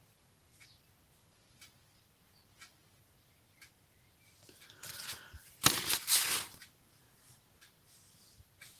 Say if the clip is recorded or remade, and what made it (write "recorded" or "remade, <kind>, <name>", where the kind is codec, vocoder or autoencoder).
remade, vocoder, BigVGAN v2